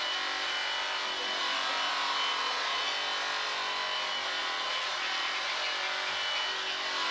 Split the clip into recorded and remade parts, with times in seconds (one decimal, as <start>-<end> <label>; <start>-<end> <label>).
0.0-2.3 recorded; 2.3-2.9 remade; 2.9-4.4 recorded; 4.4-5.3 remade; 5.3-7.1 recorded

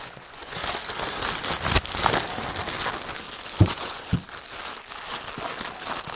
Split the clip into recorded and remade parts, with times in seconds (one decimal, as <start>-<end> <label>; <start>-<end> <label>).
0.0-0.6 remade; 0.6-3.6 recorded; 3.6-4.1 remade; 4.1-6.2 recorded

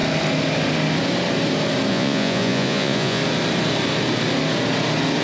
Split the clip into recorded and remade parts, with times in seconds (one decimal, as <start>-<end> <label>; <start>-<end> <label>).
0.0-1.9 recorded; 1.9-3.2 remade; 3.2-5.2 recorded

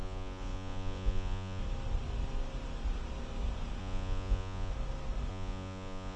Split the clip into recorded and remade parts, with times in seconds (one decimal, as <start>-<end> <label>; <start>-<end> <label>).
0.0-1.6 remade; 1.6-3.8 recorded; 3.8-4.7 remade; 4.7-5.3 recorded; 5.3-6.2 remade

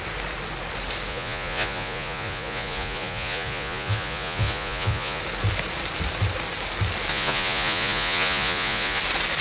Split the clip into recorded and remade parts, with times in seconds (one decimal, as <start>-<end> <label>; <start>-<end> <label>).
0.0-1.1 recorded; 1.1-5.2 remade; 5.2-7.1 recorded; 7.1-9.0 remade; 9.0-9.4 recorded

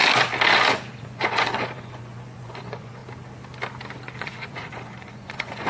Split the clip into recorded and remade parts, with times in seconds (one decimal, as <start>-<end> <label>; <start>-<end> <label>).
0.0-1.0 recorded; 1.0-3.0 remade; 3.0-4.2 recorded; 4.2-5.7 remade

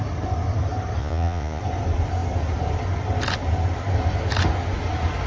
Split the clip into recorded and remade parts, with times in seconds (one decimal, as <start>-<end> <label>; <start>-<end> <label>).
0.0-1.0 recorded; 1.0-1.6 remade; 1.6-5.3 recorded